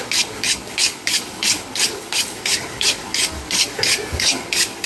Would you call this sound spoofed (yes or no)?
yes